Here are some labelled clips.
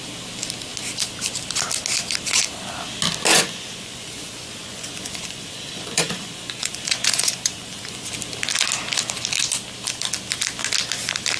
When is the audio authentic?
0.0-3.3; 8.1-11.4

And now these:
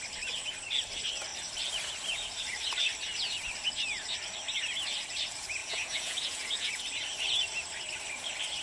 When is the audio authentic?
0.0-5.6; 6.8-8.6

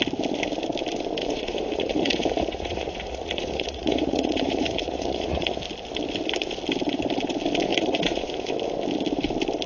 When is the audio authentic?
0.0-1.2; 5.5-7.7; 8.5-9.7

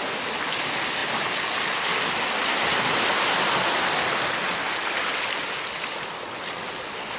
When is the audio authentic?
0.0-7.2

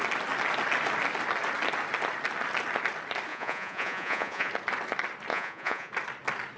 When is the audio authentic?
0.0-3.3; 4.5-5.3; 5.9-6.6

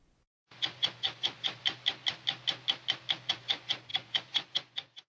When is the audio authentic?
1.6-3.3

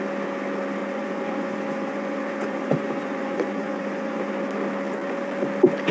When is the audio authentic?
0.0-0.8; 4.3-5.9